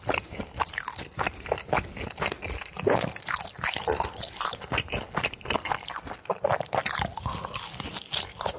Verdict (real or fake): real